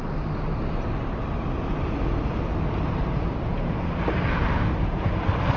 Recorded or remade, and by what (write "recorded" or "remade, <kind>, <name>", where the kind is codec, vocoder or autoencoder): recorded